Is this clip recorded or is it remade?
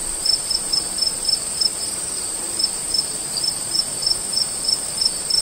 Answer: remade